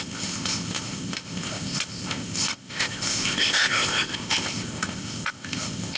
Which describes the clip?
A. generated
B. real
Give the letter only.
A